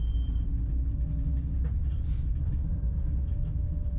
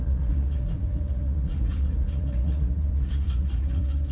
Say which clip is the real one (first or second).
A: first